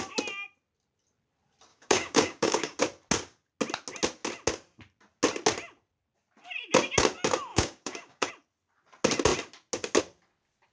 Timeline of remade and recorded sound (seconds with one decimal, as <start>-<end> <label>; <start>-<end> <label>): 0.0-1.7 recorded; 1.7-2.8 remade; 2.8-7.5 recorded; 7.5-8.3 remade; 8.3-10.7 recorded